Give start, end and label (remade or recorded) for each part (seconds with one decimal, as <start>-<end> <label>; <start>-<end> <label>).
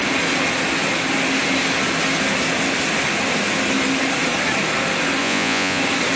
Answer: 0.0-5.2 recorded; 5.2-5.8 remade; 5.8-6.2 recorded